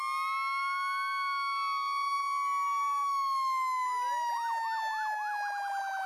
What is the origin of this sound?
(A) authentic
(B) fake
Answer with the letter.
A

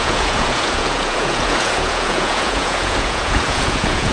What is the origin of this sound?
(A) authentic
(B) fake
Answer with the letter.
B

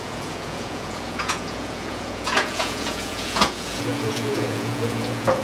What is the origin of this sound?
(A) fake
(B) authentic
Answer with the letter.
A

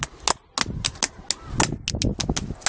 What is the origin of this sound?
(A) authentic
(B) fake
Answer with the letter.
A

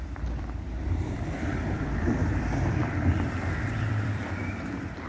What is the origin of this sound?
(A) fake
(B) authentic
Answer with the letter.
A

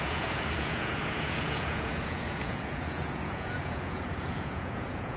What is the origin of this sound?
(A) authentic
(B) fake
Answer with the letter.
B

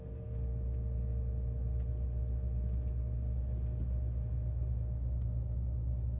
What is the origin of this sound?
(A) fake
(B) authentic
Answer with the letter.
B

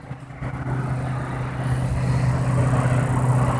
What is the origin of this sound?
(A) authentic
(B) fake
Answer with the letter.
B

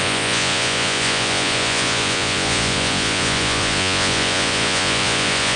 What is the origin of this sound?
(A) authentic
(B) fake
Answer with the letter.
B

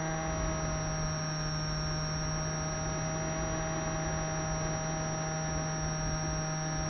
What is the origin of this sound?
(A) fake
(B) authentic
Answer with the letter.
B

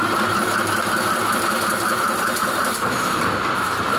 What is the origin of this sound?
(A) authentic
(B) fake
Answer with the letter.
A